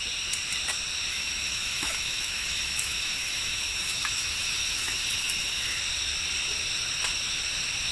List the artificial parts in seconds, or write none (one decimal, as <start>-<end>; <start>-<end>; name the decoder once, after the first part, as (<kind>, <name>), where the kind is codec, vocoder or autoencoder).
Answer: 1.1-5.8 (autoencoder, DAC-VAE)